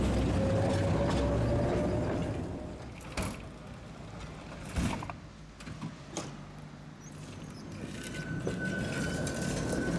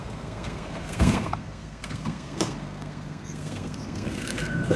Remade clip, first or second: second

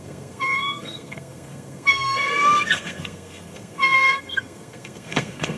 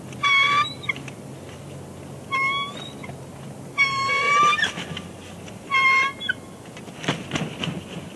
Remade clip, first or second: first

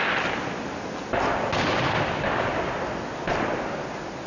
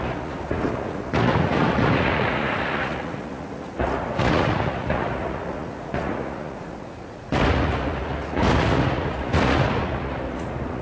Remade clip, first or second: second